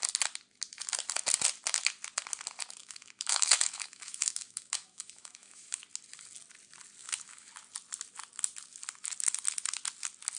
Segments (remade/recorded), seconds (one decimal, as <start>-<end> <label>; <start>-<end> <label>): 0.0-2.8 recorded; 2.8-5.8 remade; 5.8-7.0 recorded; 7.0-7.5 remade; 7.5-10.4 recorded